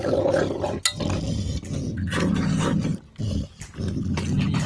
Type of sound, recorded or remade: recorded